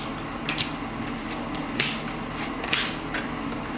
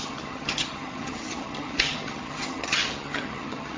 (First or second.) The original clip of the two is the first